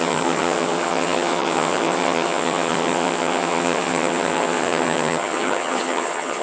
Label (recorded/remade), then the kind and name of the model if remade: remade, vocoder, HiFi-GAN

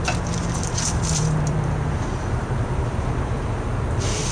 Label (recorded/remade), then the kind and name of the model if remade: remade, vocoder, BigVGAN v2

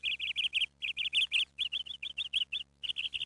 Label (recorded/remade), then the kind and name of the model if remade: recorded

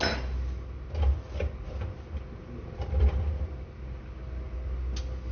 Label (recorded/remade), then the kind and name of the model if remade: recorded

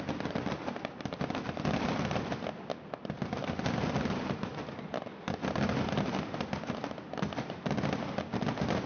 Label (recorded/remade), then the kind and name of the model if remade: recorded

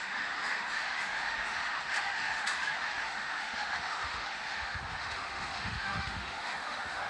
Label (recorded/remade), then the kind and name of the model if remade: remade, autoencoder, DAC-VAE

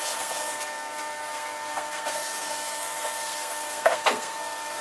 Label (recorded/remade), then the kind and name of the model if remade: remade, codec, SNAC